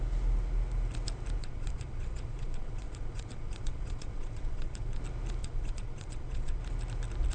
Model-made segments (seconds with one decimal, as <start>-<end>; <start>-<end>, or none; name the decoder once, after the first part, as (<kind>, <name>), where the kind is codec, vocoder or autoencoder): 1.4-5.0 (vocoder, Vocos); 5.4-6.6